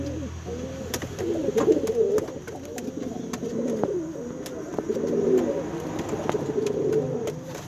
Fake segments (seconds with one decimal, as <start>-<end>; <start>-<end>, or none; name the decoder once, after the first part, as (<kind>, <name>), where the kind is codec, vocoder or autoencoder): none